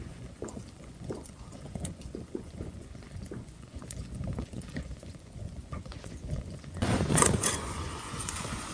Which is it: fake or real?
fake